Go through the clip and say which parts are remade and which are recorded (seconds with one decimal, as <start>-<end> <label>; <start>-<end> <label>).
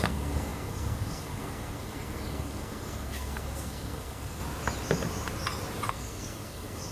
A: 0.0-4.4 remade; 4.4-5.9 recorded; 5.9-6.9 remade